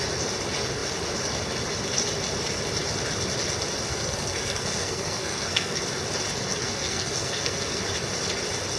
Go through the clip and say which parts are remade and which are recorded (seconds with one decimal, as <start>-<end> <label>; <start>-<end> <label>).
0.0-3.9 recorded; 3.9-5.8 remade; 5.8-6.5 recorded; 6.5-7.8 remade; 7.8-8.8 recorded